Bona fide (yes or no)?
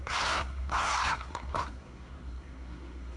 no